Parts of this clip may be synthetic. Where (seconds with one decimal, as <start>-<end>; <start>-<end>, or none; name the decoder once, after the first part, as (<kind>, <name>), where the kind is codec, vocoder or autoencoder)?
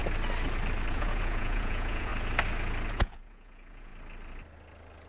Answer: 0.9-2.1 (vocoder, Vocos); 2.9-3.9